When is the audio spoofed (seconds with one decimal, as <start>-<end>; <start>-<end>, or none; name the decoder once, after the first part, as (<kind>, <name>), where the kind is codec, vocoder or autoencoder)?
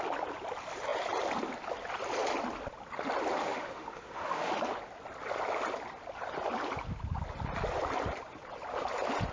3.4-4.5 (autoencoder, DAC-VAE)